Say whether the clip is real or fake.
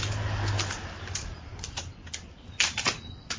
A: real